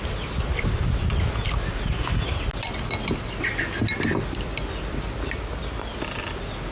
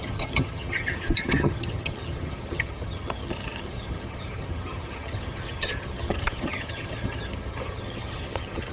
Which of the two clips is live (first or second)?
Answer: first